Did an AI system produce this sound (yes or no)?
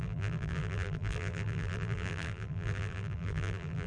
yes